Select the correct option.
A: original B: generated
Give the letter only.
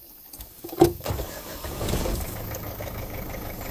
B